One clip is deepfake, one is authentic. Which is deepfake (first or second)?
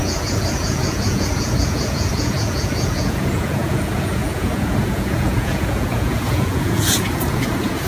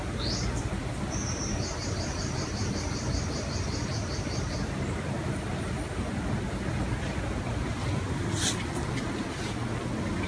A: first